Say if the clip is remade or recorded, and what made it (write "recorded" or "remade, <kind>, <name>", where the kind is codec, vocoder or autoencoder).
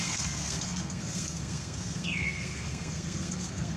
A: remade, codec, SNAC